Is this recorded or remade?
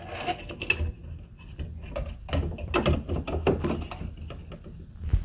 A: recorded